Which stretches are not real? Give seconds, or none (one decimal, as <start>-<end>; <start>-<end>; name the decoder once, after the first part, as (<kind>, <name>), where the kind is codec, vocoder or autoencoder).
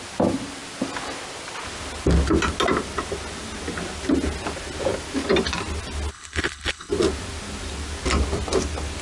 6.1-6.9 (codec, HILCodec)